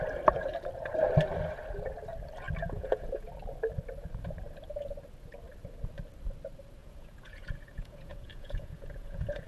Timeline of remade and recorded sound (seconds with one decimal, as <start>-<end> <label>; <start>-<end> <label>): 0.0-2.6 recorded; 2.6-3.3 remade; 3.3-6.8 recorded; 6.8-9.5 remade